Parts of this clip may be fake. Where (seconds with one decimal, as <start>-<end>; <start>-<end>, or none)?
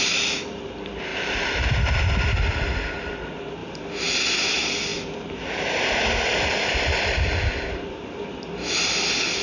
1.1-2.9; 3.6-4.5; 4.9-7.8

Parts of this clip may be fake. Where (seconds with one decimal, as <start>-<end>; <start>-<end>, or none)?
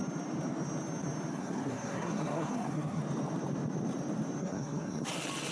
1.3-3.0; 4.4-5.1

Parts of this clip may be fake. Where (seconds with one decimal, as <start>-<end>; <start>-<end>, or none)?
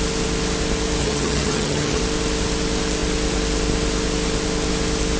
1.0-2.0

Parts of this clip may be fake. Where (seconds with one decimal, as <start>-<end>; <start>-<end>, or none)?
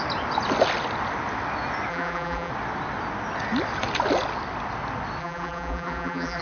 1.9-2.5; 5.2-6.4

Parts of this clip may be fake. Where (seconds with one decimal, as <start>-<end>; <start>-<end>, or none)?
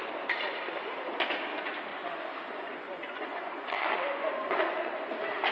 1.9-5.1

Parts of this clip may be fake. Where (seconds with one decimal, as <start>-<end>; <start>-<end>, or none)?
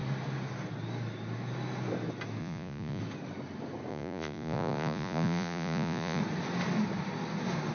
2.4-3.0; 3.9-6.2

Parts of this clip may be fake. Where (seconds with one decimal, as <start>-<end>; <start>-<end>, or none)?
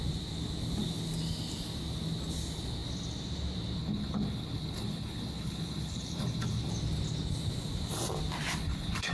3.8-6.7; 8.6-9.1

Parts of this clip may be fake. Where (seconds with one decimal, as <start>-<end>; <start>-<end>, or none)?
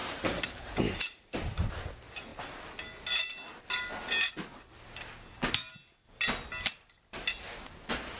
0.0-1.7